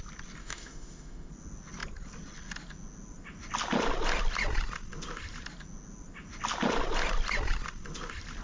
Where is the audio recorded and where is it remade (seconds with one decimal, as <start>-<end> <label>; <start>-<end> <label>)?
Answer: 0.0-0.4 recorded; 0.4-1.3 remade; 1.3-8.4 recorded